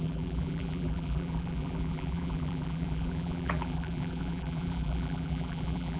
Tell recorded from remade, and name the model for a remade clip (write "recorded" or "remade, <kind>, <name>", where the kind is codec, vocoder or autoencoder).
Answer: remade, vocoder, BigVGAN v2